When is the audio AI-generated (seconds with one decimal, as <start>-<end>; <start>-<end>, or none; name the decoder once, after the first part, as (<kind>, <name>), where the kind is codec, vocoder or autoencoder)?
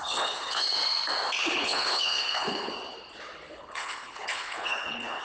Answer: 0.0-0.6 (codec, HILCodec); 1.4-2.7; 3.5-5.2